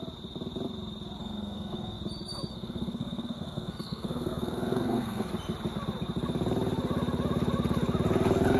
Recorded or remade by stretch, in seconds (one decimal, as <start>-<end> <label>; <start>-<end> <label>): 0.0-1.2 recorded; 1.2-2.0 remade; 2.0-2.5 recorded; 2.5-5.3 remade; 5.3-8.6 recorded